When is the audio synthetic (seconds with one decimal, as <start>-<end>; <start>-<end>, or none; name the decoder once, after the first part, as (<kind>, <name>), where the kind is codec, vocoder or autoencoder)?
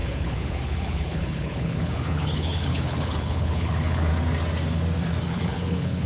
0.0-4.1 (codec, HILCodec); 5.2-6.1